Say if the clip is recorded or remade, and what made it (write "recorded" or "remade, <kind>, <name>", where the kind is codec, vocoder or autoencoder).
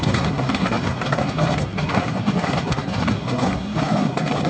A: remade, codec, SNAC